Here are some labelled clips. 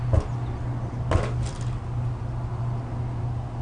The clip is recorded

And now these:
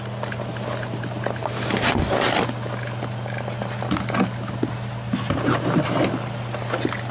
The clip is recorded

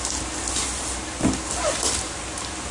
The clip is recorded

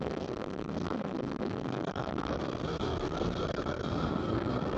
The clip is remade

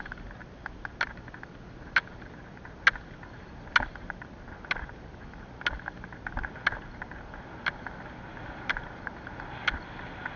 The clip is recorded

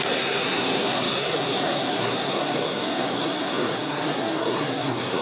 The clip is remade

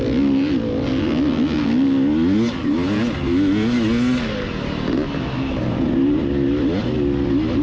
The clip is recorded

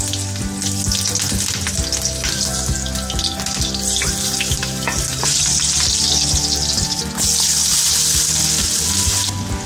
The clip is recorded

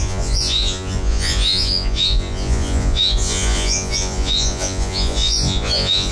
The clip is remade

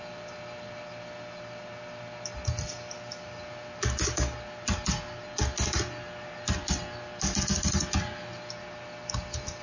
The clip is recorded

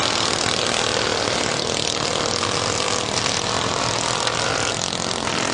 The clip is recorded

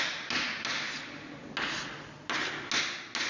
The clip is recorded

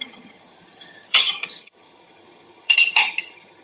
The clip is remade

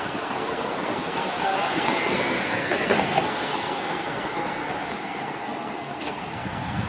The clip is remade